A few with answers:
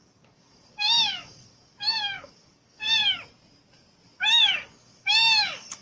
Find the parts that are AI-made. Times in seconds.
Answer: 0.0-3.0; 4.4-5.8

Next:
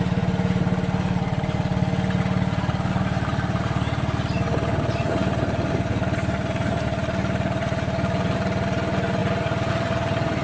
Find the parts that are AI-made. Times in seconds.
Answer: none